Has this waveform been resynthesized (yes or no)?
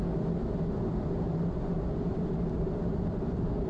no